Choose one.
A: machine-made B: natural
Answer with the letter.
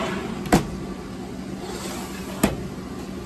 B